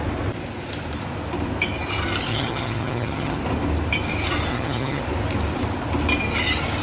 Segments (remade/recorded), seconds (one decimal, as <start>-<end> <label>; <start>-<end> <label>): 0.0-2.3 recorded; 2.3-3.4 remade; 3.4-4.5 recorded; 4.5-5.0 remade; 5.0-6.8 recorded